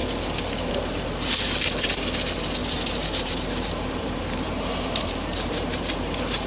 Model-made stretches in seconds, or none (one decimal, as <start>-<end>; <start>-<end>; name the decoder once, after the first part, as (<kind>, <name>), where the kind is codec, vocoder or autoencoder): 2.6-6.5 (vocoder, BigVGAN v2)